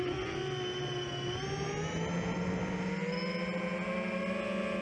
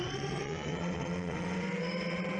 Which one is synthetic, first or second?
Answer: second